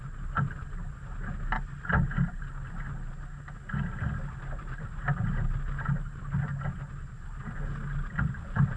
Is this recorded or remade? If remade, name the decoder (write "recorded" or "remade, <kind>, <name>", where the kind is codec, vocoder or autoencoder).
recorded